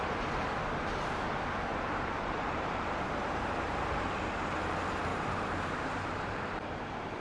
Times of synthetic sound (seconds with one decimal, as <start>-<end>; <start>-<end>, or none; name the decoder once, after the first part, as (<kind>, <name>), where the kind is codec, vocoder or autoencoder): 1.7-3.7 (vocoder, BigVGAN v2); 5.1-7.2

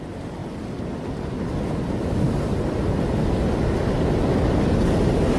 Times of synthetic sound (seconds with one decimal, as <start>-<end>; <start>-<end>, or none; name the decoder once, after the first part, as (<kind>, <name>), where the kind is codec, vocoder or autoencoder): none

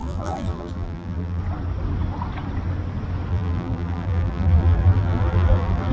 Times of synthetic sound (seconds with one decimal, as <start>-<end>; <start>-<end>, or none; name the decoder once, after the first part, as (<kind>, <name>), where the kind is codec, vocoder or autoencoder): 0.0-1.4 (vocoder, BigVGAN v2); 3.3-5.9

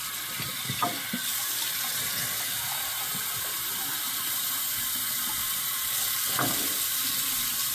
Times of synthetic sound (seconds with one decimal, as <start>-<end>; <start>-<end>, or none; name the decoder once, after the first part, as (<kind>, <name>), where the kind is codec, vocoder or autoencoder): 0.0-1.3 (vocoder, BigVGAN v2); 4.6-7.7

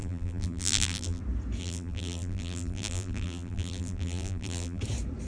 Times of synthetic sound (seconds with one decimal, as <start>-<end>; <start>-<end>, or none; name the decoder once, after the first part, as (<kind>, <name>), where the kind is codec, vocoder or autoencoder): 0.0-1.2 (vocoder, BigVGAN v2); 1.6-4.8

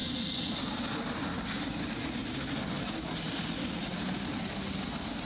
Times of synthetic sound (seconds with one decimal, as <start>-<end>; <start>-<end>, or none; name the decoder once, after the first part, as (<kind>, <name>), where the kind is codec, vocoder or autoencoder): none